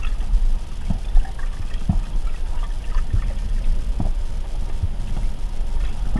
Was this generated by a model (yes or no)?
no